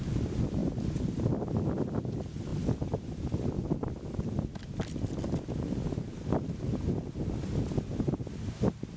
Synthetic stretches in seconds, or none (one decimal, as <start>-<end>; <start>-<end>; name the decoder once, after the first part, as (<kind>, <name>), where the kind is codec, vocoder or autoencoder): none